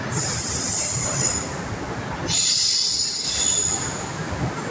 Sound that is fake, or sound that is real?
real